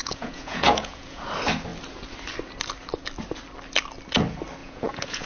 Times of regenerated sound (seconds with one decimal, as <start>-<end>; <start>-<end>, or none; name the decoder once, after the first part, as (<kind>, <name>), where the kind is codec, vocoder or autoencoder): 0.0-1.2 (vocoder, Vocos); 4.6-5.3